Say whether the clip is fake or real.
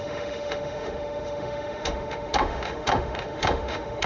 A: fake